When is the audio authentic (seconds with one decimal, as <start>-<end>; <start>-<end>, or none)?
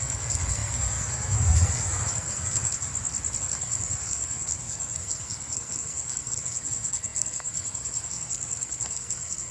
2.9-3.4